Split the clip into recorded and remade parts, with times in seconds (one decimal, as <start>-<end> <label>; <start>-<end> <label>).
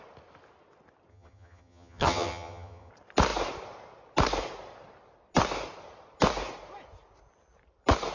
0.0-1.1 recorded; 1.1-2.9 remade; 2.9-8.1 recorded